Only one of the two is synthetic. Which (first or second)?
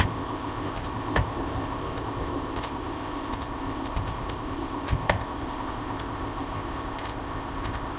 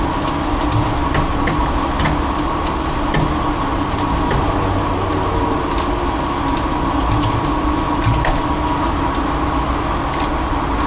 first